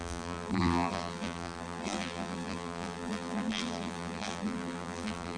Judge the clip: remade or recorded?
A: remade